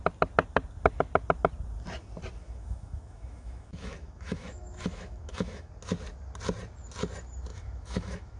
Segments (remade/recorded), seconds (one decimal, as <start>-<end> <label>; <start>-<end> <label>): 0.0-2.4 recorded; 2.4-5.7 remade; 5.7-7.5 recorded; 7.5-8.4 remade